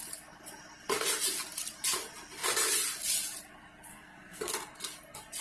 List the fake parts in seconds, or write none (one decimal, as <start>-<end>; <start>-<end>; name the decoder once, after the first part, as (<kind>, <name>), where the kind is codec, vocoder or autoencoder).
3.9-4.5 (codec, SNAC)